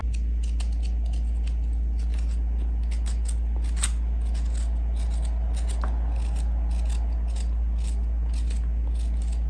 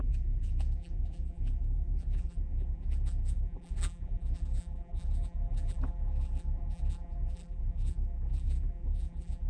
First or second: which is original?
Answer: first